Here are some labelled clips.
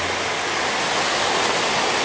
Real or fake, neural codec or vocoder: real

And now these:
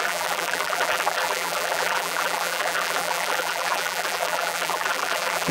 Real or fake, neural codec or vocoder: fake, vocoder, BigVGAN v2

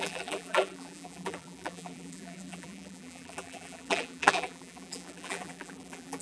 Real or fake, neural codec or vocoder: fake, vocoder, BigVGAN v2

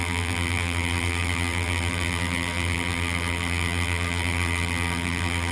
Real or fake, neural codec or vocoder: fake, vocoder, BigVGAN v2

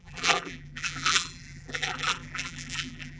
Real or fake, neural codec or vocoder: fake, vocoder, BigVGAN v2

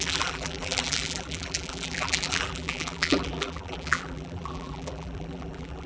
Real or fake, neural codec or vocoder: fake, vocoder, BigVGAN v2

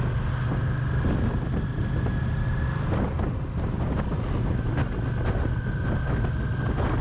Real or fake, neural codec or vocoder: real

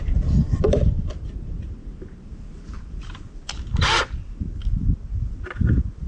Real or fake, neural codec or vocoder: fake, vocoder, BigVGAN v2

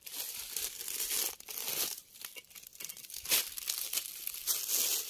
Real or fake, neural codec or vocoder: real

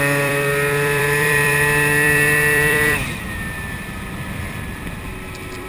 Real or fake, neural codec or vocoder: fake, vocoder, BigVGAN v2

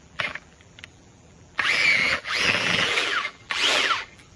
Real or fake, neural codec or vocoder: fake, vocoder, BigVGAN v2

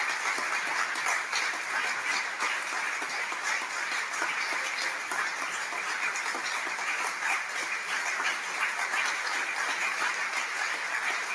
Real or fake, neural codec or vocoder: fake, vocoder, BigVGAN v2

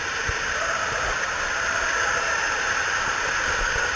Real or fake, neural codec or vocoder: fake, vocoder, BigVGAN v2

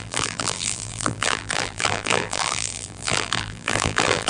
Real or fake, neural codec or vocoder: fake, vocoder, BigVGAN v2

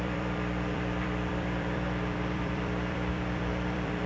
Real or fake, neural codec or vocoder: fake, vocoder, BigVGAN v2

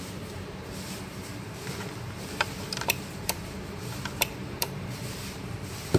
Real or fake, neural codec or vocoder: fake, vocoder, BigVGAN v2